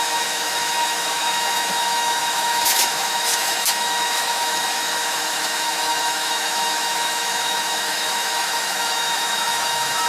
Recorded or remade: remade